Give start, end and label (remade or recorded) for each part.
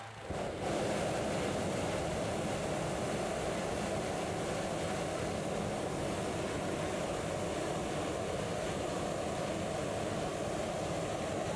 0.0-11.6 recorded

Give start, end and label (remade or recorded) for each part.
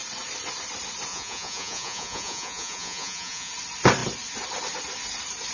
0.0-1.1 recorded; 1.1-3.5 remade; 3.5-5.5 recorded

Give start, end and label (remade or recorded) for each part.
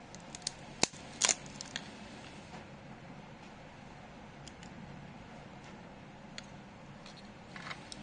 0.0-8.0 recorded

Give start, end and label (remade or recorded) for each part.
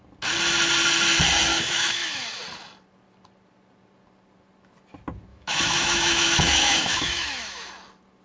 0.0-1.5 recorded; 1.5-2.4 remade; 2.4-5.3 recorded; 5.3-7.7 remade; 7.7-8.2 recorded